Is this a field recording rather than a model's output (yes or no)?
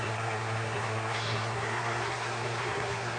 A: no